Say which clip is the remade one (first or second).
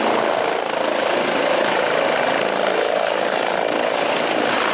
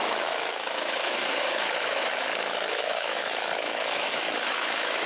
second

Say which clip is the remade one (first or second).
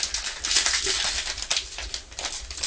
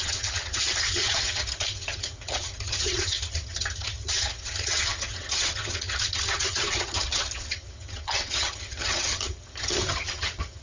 second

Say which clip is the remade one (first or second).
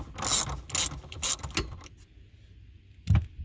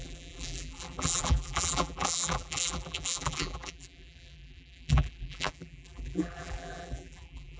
second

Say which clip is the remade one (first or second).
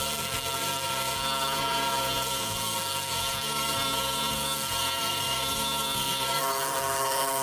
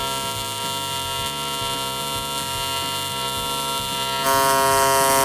first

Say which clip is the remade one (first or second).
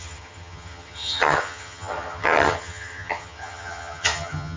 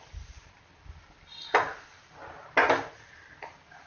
first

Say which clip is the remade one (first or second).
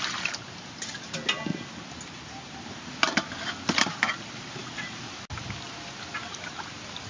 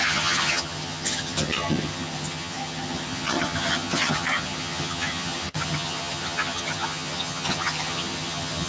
second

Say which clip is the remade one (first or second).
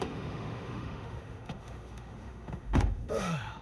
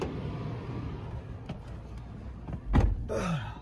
first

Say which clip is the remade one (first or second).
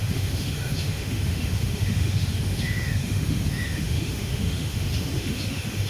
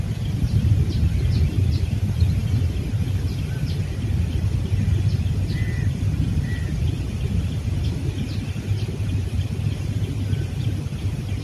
first